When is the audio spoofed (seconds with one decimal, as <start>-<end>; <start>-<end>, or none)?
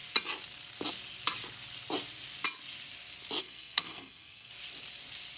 3.4-4.5